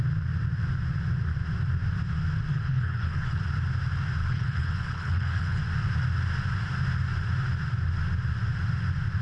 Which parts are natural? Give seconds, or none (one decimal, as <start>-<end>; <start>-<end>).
0.0-2.5; 3.4-4.2; 5.6-9.2